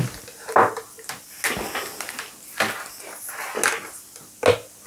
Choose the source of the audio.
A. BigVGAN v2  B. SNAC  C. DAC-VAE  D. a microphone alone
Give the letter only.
D